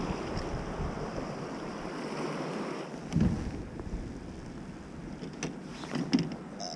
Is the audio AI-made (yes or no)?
no